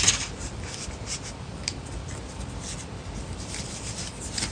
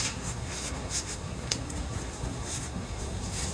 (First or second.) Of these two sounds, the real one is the first